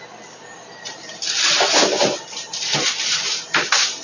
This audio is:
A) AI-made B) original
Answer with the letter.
B